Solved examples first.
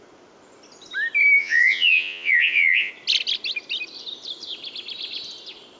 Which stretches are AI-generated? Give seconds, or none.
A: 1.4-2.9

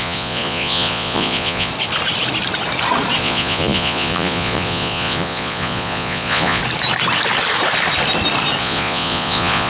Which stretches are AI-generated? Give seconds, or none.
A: 0.0-1.7; 3.2-6.6; 8.6-9.7

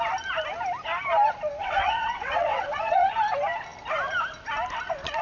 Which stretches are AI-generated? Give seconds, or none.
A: 1.6-3.1

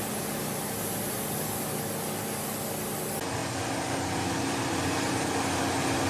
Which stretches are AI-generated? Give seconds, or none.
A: none

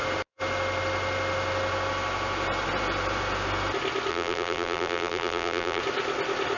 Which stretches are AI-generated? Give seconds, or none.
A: 4.1-5.8

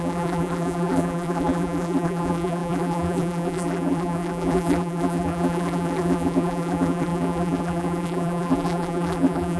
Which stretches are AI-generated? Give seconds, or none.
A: 0.0-9.6

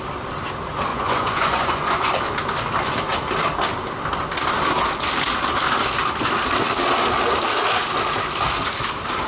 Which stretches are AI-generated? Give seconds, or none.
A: 0.9-2.2